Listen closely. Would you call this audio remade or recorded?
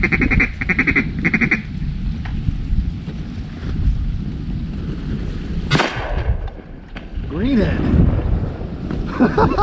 recorded